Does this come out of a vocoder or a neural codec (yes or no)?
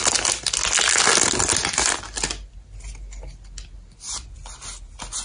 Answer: no